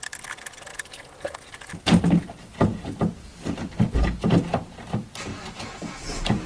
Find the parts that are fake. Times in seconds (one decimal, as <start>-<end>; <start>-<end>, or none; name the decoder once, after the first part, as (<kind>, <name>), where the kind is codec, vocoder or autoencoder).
0.7-1.7 (vocoder, Vocos); 5.3-6.0